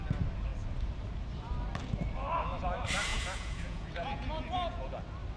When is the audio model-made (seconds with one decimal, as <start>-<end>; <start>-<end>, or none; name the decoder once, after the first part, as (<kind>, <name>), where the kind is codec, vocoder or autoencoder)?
3.1-4.9 (vocoder, Vocos)